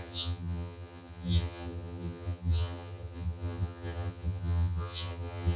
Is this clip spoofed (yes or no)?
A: yes